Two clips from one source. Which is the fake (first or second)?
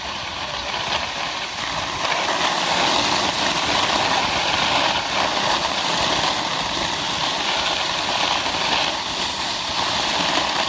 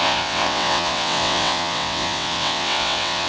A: second